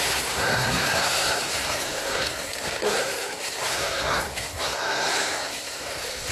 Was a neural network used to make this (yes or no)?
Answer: yes